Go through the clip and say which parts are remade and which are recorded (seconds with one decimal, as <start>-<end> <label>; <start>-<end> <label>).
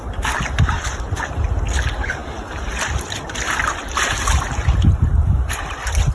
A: 0.0-6.1 recorded